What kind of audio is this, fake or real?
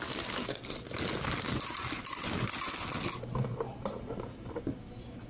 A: real